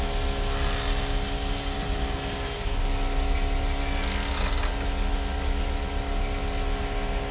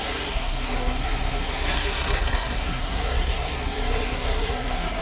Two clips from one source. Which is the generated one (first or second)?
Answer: second